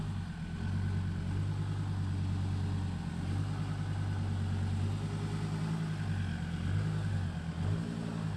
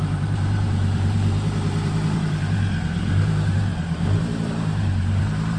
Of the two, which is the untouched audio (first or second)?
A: first